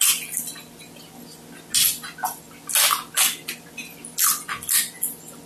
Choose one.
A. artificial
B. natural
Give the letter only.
B